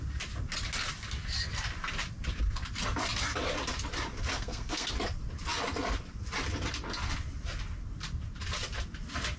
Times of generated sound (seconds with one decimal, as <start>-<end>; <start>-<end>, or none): 4.3-4.9

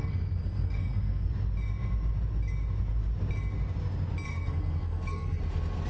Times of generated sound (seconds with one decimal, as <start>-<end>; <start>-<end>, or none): 0.0-1.3; 4.3-5.4

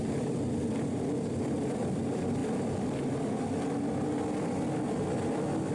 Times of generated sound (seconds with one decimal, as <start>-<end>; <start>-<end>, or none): none

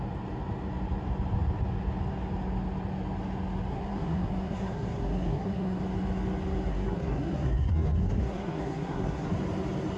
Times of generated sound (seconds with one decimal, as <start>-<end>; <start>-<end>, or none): 3.7-5.8; 6.7-9.3

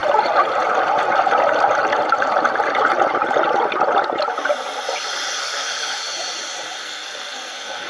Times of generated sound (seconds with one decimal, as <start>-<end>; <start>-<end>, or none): 5.4-6.0; 6.8-7.9

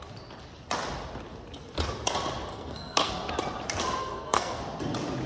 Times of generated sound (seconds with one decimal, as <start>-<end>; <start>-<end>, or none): 2.5-3.1; 4.0-4.6

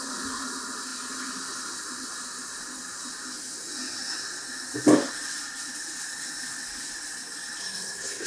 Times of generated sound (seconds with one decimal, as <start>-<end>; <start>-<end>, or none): 7.6-8.3